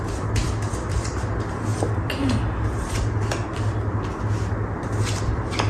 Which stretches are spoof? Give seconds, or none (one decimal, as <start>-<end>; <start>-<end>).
0.4-1.1; 1.7-4.2